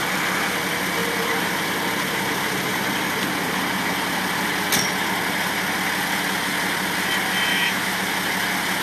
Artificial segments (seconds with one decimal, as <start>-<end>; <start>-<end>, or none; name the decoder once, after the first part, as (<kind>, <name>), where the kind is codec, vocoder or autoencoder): 7.5-8.0 (autoencoder, DAC-VAE)